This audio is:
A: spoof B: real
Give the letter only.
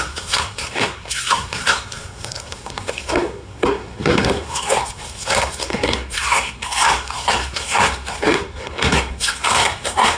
A